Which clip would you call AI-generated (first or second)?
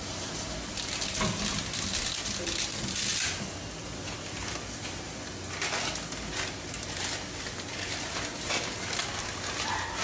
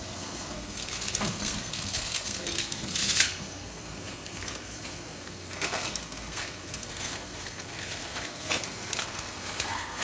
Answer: second